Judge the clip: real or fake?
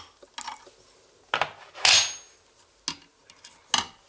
real